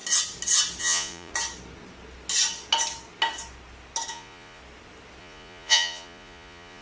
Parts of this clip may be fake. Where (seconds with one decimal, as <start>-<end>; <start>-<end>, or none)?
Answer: 0.8-1.3; 4.1-4.6; 5.2-6.8